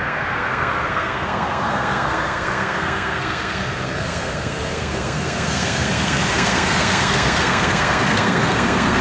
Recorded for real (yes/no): no